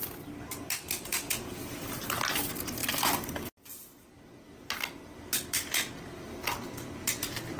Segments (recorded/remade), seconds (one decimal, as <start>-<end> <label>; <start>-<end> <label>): 0.0-1.1 recorded; 1.1-2.0 remade; 2.0-2.8 recorded; 2.8-5.7 remade; 5.7-7.6 recorded